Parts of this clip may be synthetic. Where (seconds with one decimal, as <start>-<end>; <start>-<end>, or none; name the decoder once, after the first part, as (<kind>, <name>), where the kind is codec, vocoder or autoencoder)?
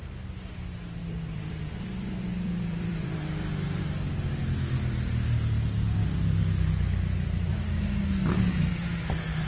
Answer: 1.0-3.8 (vocoder, BigVGAN v2)